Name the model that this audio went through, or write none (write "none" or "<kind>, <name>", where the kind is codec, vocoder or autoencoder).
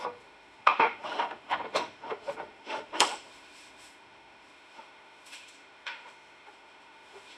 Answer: autoencoder, DAC-VAE